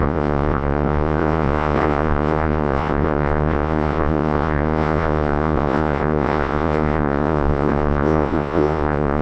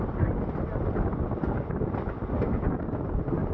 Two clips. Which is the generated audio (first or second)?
first